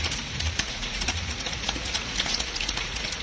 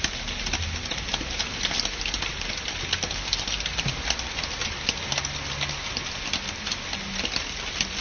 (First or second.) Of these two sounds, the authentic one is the second